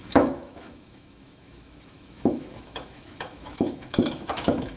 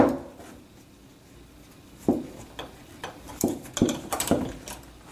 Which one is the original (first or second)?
second